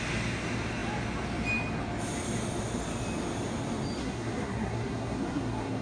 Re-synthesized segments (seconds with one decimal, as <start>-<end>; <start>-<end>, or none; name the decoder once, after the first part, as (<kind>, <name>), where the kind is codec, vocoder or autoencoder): 4.0-5.8 (codec, SNAC)